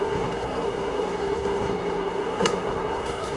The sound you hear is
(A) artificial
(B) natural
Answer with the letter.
A